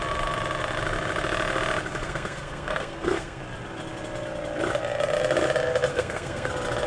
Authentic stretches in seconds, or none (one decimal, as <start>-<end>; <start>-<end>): 0.0-1.9; 3.4-5.9; 6.5-6.9